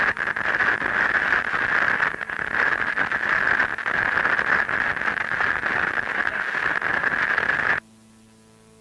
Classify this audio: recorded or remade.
recorded